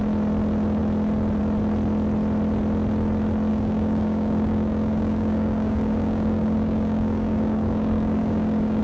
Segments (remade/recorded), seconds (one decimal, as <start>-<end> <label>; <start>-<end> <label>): 0.0-3.5 recorded; 3.5-8.8 remade